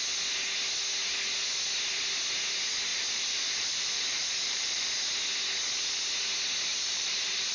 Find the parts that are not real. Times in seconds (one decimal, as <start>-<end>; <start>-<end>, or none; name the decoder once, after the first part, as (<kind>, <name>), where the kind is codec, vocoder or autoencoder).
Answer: 2.9-4.9 (vocoder, BigVGAN v2); 6.7-7.5